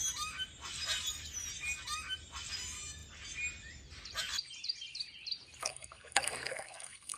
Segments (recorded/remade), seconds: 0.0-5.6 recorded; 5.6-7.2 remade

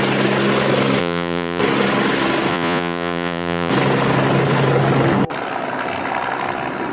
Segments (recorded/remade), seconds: 0.0-1.0 recorded; 1.0-1.6 remade; 1.6-2.5 recorded; 2.5-3.7 remade; 3.7-6.9 recorded

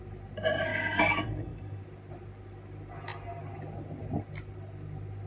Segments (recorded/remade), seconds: 0.0-0.7 recorded; 0.7-1.8 remade; 1.8-5.3 recorded

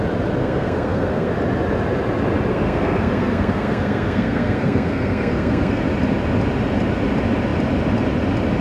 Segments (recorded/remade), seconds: 0.0-0.4 recorded; 0.4-1.3 remade; 1.3-2.5 recorded; 2.5-5.8 remade; 5.8-8.6 recorded

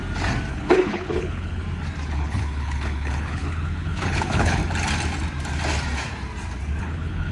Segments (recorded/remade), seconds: 0.0-0.5 recorded; 0.5-1.6 remade; 1.6-2.1 recorded; 2.1-4.6 remade; 4.6-6.8 recorded; 6.8-7.3 remade

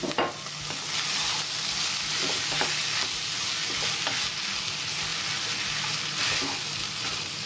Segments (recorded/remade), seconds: 0.0-7.5 recorded

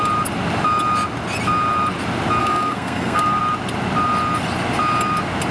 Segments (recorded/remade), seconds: 0.0-2.4 recorded; 2.4-3.4 remade; 3.4-5.5 recorded

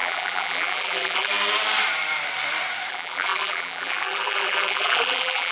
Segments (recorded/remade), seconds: 0.0-1.3 remade; 1.3-2.9 recorded; 2.9-5.5 remade